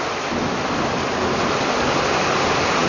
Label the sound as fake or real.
real